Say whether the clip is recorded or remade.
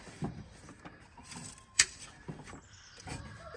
remade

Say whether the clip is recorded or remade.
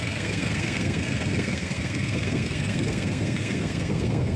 remade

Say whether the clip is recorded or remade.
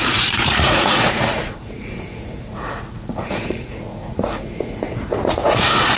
remade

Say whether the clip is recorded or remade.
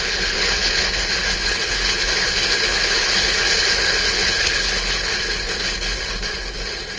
remade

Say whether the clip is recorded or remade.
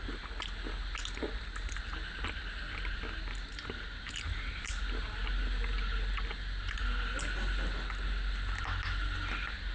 recorded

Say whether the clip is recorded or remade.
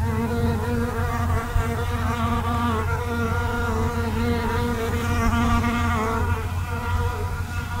recorded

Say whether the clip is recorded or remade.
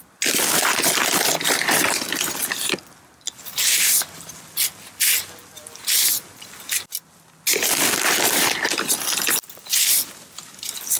recorded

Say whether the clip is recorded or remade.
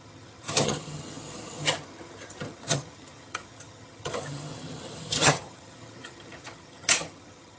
remade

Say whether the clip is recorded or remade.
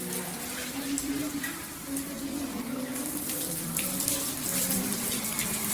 remade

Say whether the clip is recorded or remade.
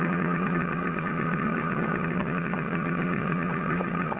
remade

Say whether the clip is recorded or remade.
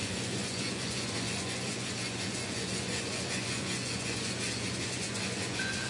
remade